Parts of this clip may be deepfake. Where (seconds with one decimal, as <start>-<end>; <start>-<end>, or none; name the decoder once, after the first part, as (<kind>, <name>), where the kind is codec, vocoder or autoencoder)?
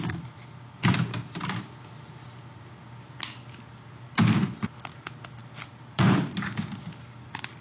none